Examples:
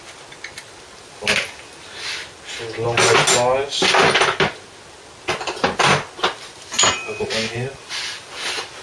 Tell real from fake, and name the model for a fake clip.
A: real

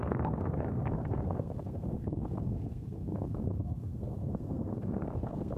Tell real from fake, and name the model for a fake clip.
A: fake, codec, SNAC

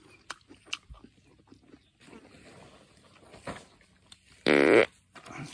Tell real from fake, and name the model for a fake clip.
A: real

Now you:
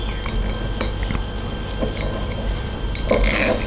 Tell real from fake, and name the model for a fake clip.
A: real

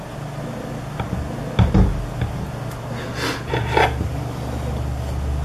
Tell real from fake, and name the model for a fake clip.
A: real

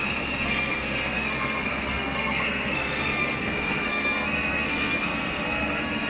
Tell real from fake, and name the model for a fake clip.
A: fake, codec, SNAC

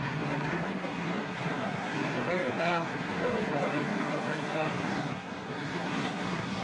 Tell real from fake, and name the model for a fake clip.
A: fake, codec, SNAC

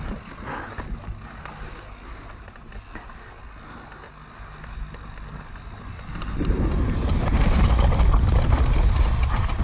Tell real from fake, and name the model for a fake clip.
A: real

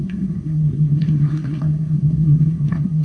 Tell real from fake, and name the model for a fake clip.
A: fake, codec, SNAC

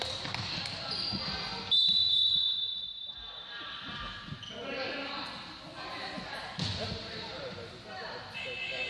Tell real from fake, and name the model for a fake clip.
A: real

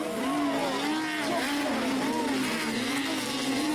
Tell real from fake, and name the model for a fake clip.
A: real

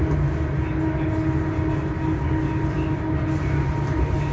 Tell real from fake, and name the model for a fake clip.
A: real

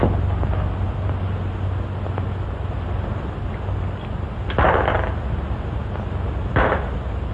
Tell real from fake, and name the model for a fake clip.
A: real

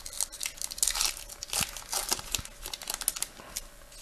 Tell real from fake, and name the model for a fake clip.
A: real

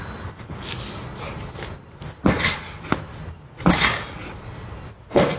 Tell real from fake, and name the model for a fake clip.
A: real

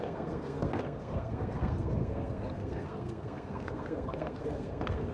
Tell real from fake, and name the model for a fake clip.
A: fake, codec, SNAC